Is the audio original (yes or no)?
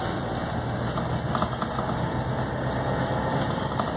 yes